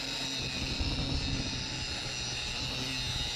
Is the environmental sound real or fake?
real